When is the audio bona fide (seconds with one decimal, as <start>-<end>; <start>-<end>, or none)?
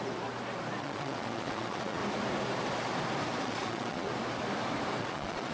0.0-0.8; 2.0-3.4; 4.1-5.0